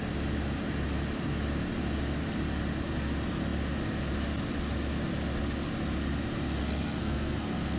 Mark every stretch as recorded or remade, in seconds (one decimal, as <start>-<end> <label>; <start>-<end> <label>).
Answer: 0.0-6.6 recorded; 6.6-7.8 remade